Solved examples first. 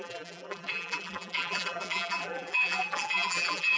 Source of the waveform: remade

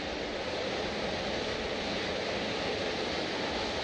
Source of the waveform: recorded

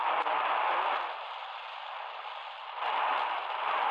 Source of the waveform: recorded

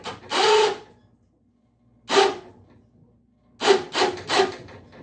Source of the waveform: recorded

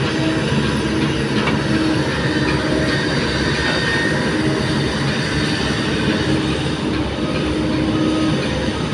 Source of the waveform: recorded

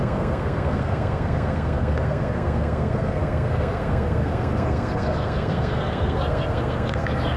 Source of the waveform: remade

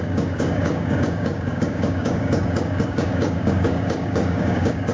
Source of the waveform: remade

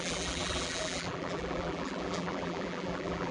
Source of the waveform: remade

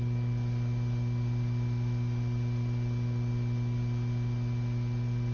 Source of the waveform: recorded